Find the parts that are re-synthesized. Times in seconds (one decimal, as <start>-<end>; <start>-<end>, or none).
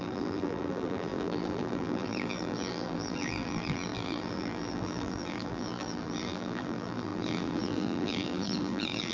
0.0-9.1